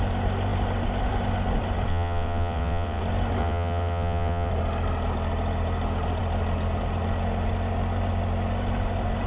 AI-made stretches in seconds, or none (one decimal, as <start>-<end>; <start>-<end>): 1.9-3.0; 3.4-4.5